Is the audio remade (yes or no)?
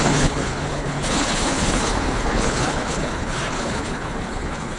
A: yes